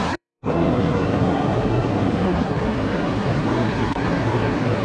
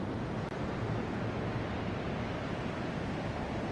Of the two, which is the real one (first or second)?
second